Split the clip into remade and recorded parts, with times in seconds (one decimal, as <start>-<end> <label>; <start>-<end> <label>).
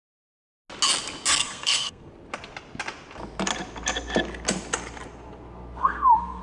0.0-1.4 recorded; 1.4-2.1 remade; 2.1-5.8 recorded; 5.8-6.4 remade